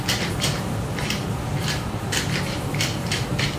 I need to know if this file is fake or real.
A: fake